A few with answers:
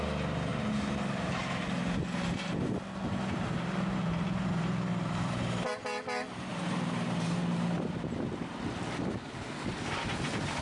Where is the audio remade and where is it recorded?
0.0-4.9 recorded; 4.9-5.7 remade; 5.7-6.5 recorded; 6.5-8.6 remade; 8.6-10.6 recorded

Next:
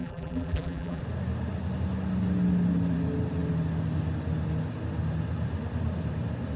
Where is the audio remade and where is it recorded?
0.0-1.0 remade; 1.0-6.6 recorded

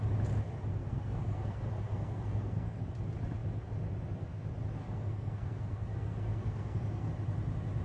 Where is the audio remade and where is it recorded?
0.0-0.7 recorded; 0.7-2.8 remade; 2.8-4.8 recorded; 4.8-7.1 remade; 7.1-7.8 recorded

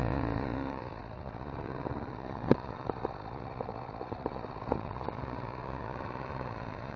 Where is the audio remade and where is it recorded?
0.0-7.0 remade